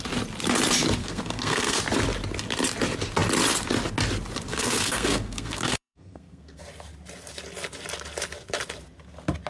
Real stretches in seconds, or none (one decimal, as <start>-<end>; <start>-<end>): 0.0-1.0; 1.8-4.5; 6.6-9.5